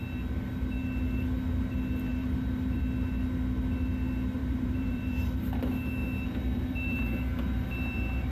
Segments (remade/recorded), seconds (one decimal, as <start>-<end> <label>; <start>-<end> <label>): 0.0-2.1 recorded; 2.1-2.8 remade; 2.8-4.4 recorded; 4.4-5.4 remade; 5.4-8.3 recorded